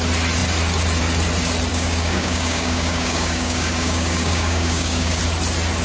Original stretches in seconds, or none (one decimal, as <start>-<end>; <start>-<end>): 0.0-1.7; 5.2-5.8